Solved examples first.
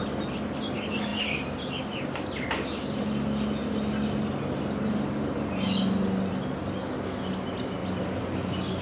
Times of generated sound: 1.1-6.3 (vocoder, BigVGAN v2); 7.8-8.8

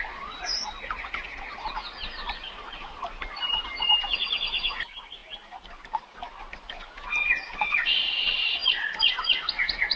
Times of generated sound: 0.0-0.5 (vocoder, BigVGAN v2); 1.5-5.2; 7.5-8.6

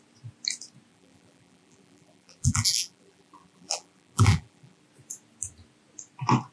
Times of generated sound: 0.9-4.8 (vocoder, BigVGAN v2)

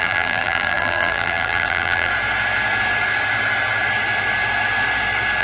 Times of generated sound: 0.0-2.1 (vocoder, BigVGAN v2)

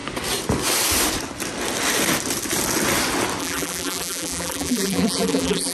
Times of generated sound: 3.4-5.7 (vocoder, BigVGAN v2)